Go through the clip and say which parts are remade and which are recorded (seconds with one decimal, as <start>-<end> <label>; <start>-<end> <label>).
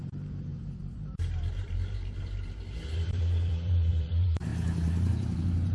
0.0-5.7 remade